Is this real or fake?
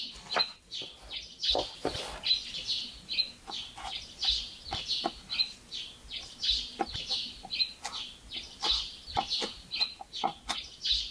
real